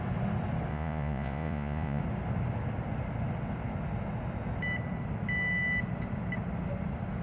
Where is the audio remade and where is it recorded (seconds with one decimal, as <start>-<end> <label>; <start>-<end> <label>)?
0.0-0.7 recorded; 0.7-2.0 remade; 2.0-7.2 recorded